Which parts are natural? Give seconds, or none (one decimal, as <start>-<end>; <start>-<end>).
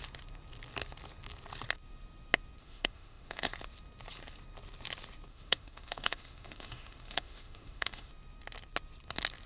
0.0-2.6; 3.5-5.3; 8.1-9.5